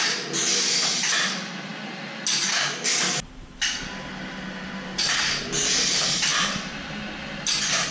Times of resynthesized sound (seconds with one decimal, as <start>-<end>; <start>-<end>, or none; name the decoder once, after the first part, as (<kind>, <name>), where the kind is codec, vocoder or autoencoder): none